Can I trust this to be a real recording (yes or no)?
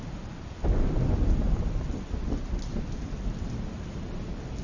yes